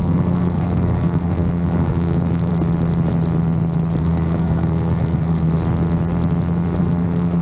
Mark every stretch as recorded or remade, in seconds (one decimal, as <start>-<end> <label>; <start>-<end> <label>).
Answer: 0.0-2.5 remade; 2.5-4.0 recorded; 4.0-5.5 remade; 5.5-6.8 recorded; 6.8-7.4 remade